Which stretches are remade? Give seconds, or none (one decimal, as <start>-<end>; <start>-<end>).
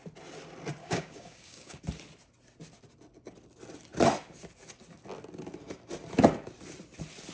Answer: 0.8-1.8